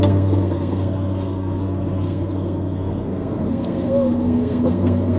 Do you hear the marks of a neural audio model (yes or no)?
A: yes